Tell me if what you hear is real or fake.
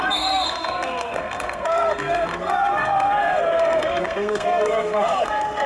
fake